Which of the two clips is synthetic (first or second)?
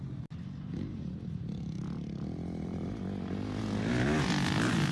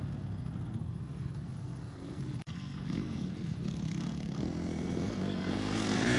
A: second